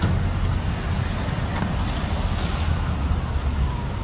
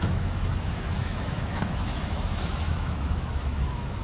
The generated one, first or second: second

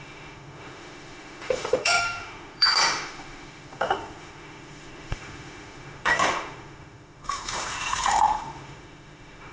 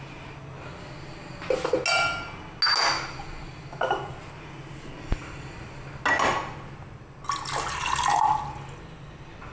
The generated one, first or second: first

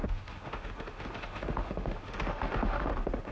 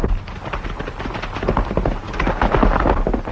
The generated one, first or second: first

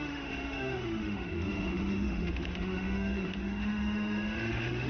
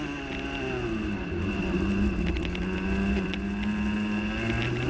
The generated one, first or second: first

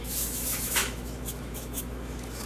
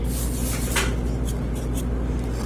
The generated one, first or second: first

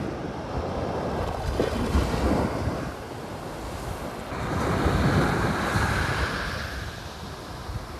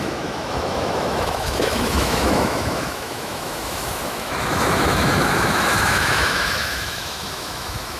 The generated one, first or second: second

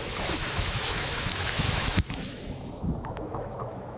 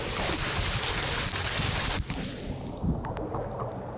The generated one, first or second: first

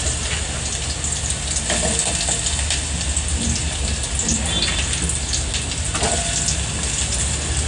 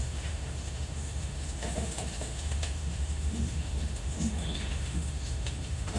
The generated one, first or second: second